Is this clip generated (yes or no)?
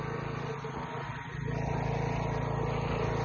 no